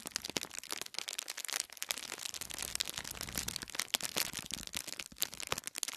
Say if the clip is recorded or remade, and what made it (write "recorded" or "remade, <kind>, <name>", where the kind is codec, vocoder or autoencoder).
recorded